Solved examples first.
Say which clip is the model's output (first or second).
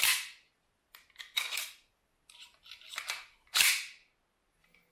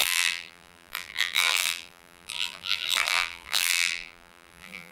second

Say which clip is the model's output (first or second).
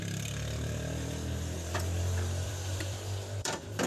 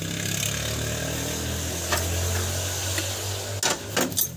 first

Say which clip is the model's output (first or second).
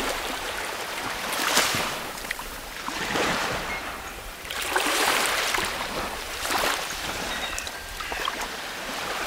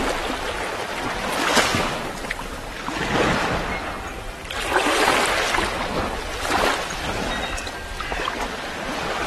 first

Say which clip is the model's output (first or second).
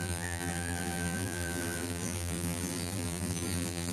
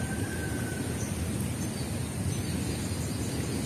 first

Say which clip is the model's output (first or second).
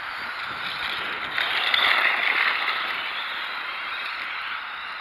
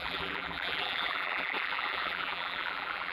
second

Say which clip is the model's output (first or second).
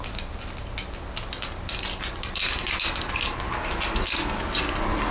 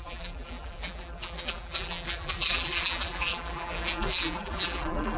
second